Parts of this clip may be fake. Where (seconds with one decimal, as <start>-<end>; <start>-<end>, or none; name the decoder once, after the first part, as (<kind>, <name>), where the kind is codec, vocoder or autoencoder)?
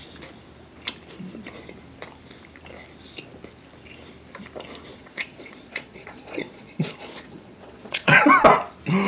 4.9-8.2 (vocoder, Vocos)